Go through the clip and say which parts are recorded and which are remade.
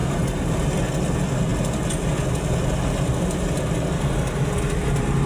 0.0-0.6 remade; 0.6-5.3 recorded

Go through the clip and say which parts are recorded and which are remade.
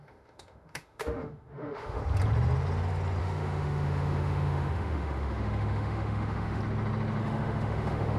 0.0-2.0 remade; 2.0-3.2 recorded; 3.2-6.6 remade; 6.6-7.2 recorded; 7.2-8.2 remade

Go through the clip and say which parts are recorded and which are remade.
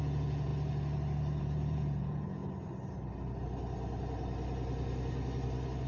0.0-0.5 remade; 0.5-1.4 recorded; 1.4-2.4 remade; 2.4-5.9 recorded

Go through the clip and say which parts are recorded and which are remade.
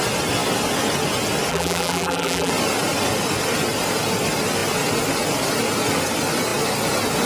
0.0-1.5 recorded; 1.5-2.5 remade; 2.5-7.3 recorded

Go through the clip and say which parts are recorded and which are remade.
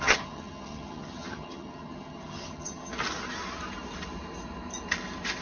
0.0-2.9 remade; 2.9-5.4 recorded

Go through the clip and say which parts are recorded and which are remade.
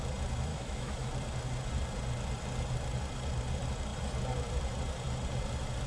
0.0-0.5 recorded; 0.5-1.1 remade; 1.1-5.9 recorded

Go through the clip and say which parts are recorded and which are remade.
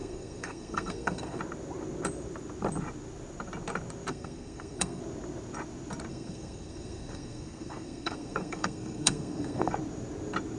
0.0-1.4 remade; 1.4-4.1 recorded; 4.1-5.0 remade; 5.0-6.1 recorded; 6.1-9.7 remade; 9.7-10.6 recorded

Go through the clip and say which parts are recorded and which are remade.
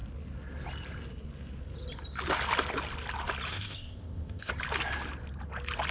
0.0-3.5 recorded; 3.5-4.5 remade; 4.5-5.9 recorded